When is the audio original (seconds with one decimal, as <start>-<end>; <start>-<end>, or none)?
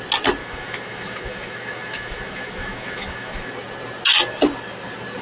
0.0-0.4; 3.5-5.2